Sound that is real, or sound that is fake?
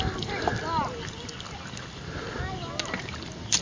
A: real